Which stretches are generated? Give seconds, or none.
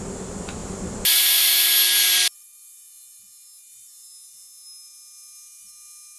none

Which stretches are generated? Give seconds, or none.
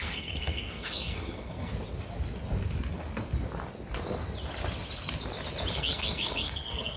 0.0-1.7 (codec, SNAC); 5.7-7.0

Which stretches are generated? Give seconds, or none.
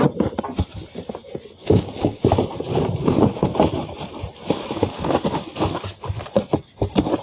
1.6-2.2 (codec, DAC)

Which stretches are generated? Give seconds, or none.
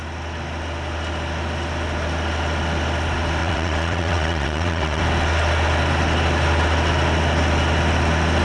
3.4-5.0 (vocoder, WaveNeXt)